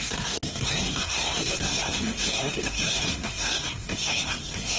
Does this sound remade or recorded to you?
remade